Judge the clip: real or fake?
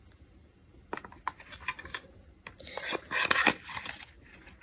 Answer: real